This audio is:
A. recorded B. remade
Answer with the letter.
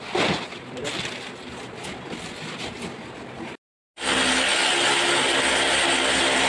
A